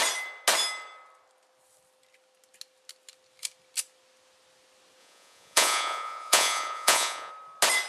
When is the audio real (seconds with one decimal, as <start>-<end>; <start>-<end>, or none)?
0.0-5.0; 7.3-7.9